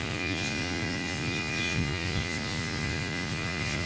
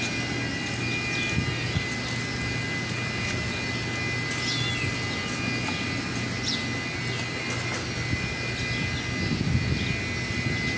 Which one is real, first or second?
second